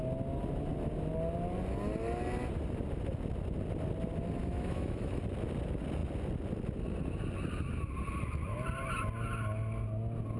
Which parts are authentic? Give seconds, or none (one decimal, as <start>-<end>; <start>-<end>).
0.0-4.4; 5.2-10.4